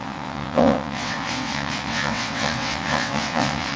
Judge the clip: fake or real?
fake